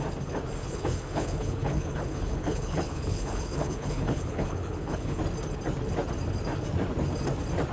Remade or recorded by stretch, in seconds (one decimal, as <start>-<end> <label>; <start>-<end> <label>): 0.0-0.6 recorded; 0.6-5.2 remade; 5.2-7.7 recorded